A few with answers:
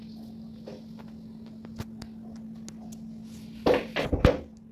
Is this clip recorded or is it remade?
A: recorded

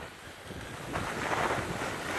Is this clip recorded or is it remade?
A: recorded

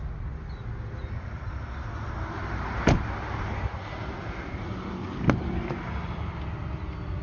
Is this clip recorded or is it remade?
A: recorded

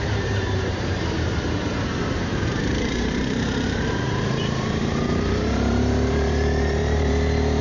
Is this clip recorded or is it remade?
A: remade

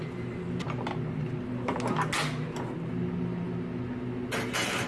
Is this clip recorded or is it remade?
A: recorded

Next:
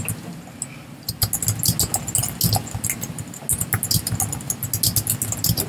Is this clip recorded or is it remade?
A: recorded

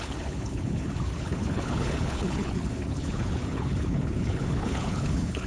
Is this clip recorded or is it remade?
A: remade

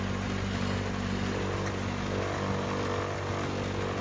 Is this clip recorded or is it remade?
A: recorded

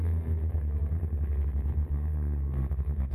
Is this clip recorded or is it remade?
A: remade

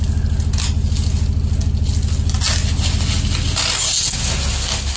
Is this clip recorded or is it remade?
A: recorded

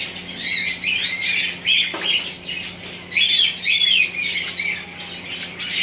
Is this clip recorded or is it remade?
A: recorded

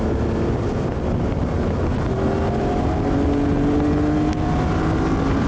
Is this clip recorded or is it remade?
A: recorded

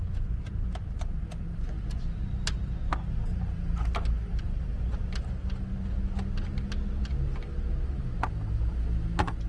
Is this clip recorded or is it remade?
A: recorded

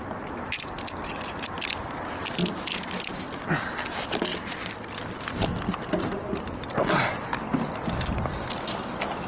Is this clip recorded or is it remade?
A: recorded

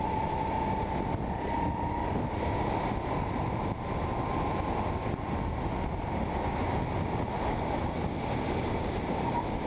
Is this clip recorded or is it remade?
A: recorded